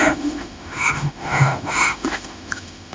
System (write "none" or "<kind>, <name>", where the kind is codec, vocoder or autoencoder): autoencoder, DAC-VAE